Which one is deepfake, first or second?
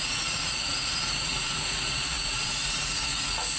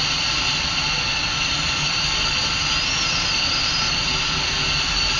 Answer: first